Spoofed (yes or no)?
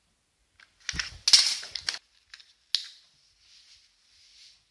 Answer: no